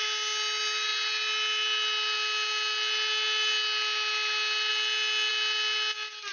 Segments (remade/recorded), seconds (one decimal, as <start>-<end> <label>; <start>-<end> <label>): 0.0-6.3 recorded